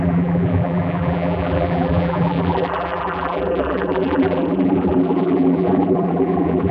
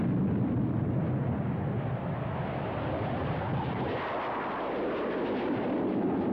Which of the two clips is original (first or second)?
second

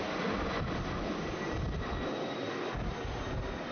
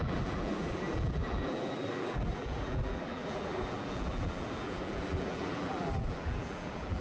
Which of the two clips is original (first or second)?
first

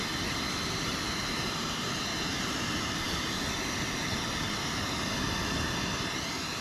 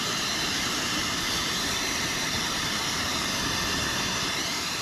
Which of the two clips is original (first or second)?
first